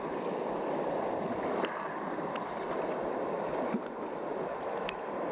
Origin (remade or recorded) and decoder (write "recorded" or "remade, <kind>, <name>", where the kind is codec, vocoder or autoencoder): recorded